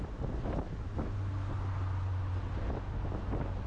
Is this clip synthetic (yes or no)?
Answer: no